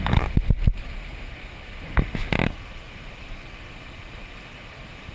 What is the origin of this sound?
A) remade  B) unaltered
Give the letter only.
B